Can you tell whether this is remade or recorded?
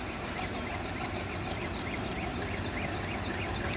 recorded